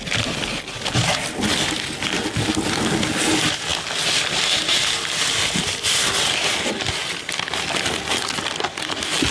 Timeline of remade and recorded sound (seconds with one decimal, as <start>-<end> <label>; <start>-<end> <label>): 0.0-9.3 recorded